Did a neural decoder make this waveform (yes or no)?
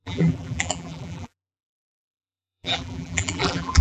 yes